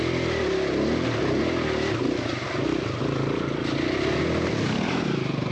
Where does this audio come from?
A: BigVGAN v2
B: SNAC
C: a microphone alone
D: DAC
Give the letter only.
C